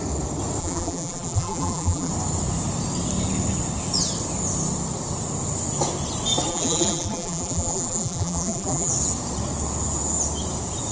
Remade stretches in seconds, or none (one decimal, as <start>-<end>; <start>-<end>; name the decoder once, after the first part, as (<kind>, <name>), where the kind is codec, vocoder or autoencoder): 0.6-2.1 (vocoder, BigVGAN v2); 6.5-8.9